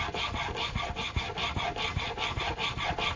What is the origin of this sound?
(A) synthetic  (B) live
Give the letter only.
B